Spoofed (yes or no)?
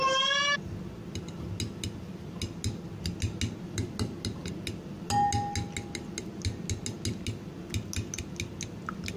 no